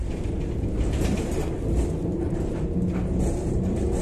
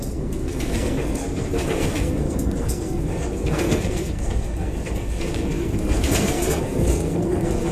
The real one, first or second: first